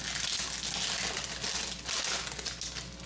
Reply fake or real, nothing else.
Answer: real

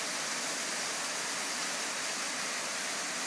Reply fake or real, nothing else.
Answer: real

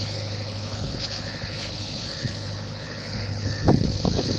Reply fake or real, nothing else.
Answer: fake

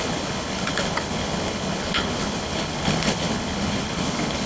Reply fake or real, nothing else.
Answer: fake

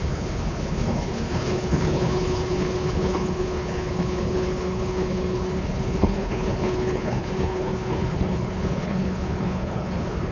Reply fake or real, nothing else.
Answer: fake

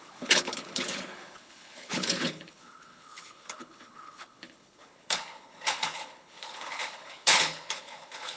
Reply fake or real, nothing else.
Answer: fake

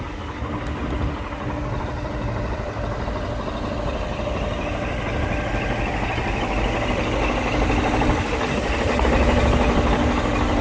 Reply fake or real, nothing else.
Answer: real